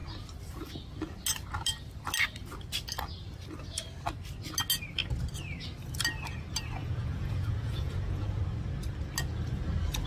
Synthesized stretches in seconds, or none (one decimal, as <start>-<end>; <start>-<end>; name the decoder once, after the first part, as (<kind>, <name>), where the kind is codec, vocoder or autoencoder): 6.8-8.4 (vocoder, Vocos)